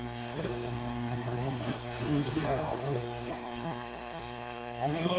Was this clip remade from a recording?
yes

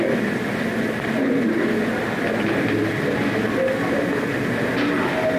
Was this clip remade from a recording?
no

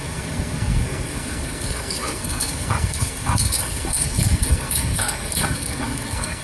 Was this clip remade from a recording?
yes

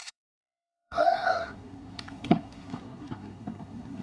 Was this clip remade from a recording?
yes